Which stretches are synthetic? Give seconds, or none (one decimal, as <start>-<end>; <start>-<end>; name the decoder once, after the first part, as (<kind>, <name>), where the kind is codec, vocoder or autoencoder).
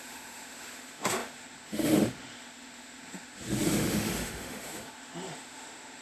0.0-6.0 (autoencoder, DAC-VAE)